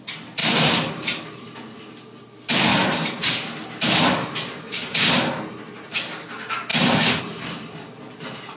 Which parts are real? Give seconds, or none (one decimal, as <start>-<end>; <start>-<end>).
0.0-0.4; 1.2-6.7; 7.2-8.6

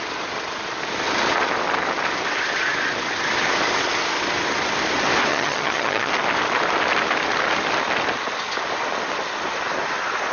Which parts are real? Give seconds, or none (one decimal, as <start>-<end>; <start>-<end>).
0.0-5.3; 6.1-10.3

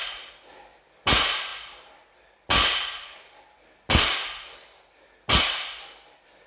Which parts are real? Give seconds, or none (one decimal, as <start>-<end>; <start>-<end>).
none